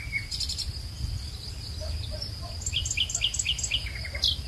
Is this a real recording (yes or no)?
yes